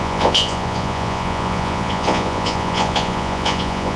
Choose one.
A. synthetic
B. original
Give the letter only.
A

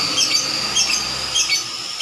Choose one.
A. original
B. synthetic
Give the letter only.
A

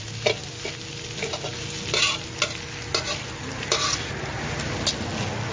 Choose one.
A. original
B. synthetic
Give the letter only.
A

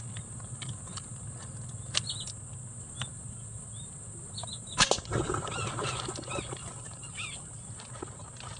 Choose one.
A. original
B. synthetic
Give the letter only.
A